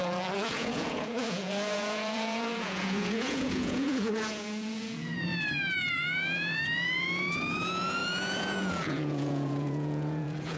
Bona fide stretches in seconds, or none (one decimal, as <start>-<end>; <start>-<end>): none